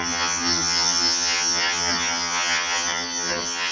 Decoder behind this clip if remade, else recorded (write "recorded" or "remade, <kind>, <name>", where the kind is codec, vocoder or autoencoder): remade, vocoder, HiFi-GAN